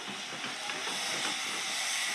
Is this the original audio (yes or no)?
yes